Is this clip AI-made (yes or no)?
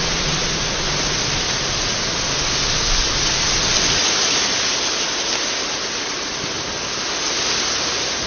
no